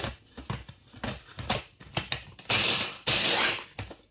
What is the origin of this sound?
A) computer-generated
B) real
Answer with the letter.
B